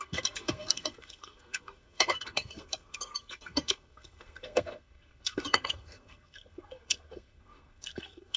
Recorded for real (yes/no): no